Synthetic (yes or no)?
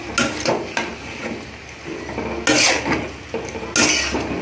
no